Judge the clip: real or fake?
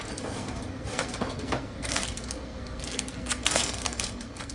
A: fake